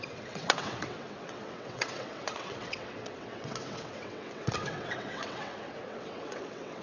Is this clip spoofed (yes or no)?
yes